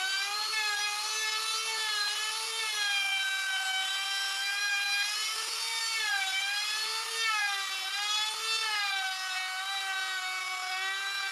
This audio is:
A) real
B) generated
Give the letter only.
A